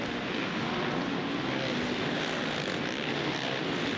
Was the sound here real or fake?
real